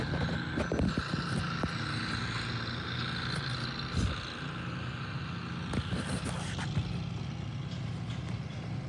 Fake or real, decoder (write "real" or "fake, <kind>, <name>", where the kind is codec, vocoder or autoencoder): real